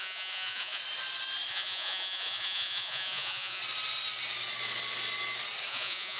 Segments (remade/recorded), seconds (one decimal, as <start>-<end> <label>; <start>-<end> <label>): 0.0-0.8 remade; 0.8-1.5 recorded; 1.5-3.6 remade; 3.6-5.7 recorded; 5.7-6.2 remade